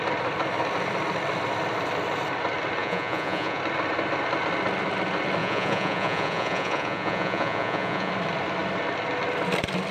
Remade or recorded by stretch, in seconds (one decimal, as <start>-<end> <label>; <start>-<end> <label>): 0.0-2.8 recorded; 2.8-3.6 remade; 3.6-5.4 recorded; 5.4-8.1 remade; 8.1-9.9 recorded